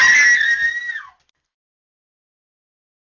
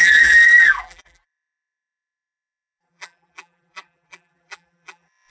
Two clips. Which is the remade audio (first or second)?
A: second